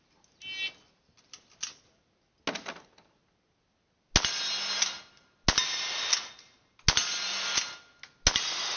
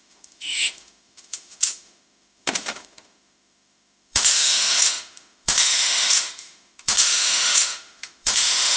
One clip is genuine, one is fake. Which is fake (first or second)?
second